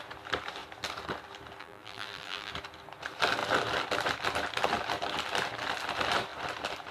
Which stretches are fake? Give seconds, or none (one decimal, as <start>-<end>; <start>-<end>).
1.6-2.5